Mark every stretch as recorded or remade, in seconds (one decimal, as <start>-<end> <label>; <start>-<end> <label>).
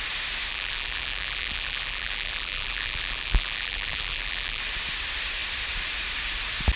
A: 0.0-0.5 recorded; 0.5-4.6 remade; 4.6-6.8 recorded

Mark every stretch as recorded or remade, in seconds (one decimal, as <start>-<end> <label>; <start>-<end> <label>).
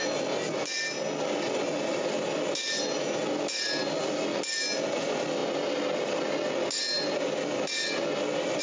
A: 0.0-8.6 recorded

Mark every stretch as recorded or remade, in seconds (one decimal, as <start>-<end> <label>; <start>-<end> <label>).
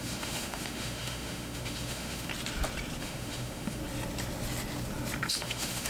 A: 0.0-2.3 remade; 2.3-3.0 recorded; 3.0-3.8 remade; 3.8-5.3 recorded; 5.3-5.9 remade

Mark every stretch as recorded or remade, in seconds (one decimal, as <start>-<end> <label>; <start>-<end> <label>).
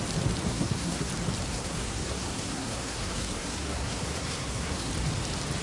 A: 0.0-0.5 recorded; 0.5-1.1 remade; 1.1-1.5 recorded; 1.5-4.9 remade; 4.9-5.6 recorded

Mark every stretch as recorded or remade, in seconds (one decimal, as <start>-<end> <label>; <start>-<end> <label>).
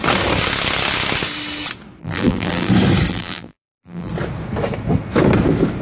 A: 0.0-2.0 recorded; 2.0-2.7 remade; 2.7-3.1 recorded; 3.1-4.1 remade; 4.1-5.8 recorded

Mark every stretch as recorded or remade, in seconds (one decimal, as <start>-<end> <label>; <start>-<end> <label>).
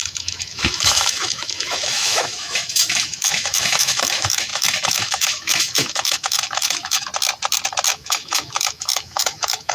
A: 0.0-7.1 remade; 7.1-7.9 recorded; 7.9-9.7 remade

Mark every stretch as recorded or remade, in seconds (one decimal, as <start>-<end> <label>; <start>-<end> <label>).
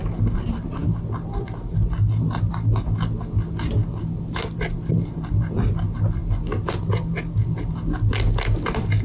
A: 0.0-9.0 recorded